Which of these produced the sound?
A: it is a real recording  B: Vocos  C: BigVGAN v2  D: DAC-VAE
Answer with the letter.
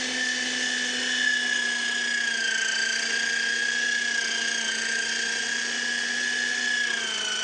A